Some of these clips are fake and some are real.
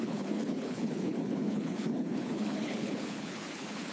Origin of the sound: fake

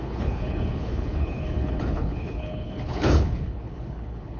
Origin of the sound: fake